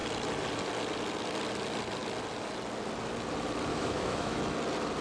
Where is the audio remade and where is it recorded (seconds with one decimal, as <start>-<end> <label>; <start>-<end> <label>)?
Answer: 0.0-3.7 recorded; 3.7-4.4 remade; 4.4-5.0 recorded